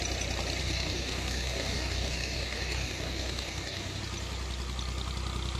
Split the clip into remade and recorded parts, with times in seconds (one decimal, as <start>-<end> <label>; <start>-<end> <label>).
0.0-0.6 recorded; 0.6-4.0 remade; 4.0-5.6 recorded